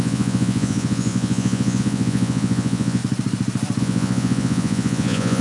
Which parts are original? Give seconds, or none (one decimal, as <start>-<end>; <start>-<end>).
3.0-3.8

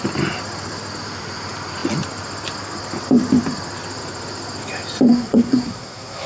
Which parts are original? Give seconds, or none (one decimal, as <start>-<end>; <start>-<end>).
0.0-5.1

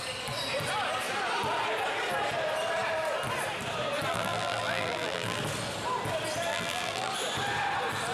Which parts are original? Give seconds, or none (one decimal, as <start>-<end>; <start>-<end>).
0.0-4.1; 5.4-6.5; 7.1-8.1

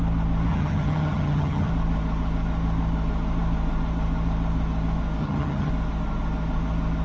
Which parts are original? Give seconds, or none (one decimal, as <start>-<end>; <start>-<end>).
0.0-0.5; 1.7-5.2; 5.7-7.0

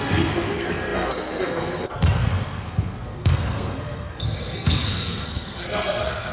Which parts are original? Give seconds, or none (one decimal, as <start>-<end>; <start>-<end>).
none

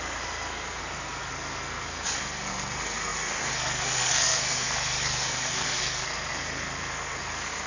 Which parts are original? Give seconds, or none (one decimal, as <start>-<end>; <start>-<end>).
0.8-1.3

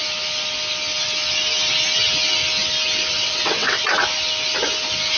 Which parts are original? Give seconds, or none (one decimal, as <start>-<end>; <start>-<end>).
0.0-3.1; 3.8-5.2

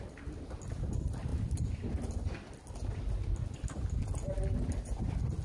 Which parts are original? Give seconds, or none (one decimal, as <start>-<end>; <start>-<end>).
0.0-5.4